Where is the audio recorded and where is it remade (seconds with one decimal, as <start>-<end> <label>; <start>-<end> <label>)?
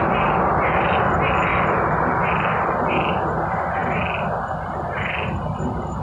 0.0-6.0 recorded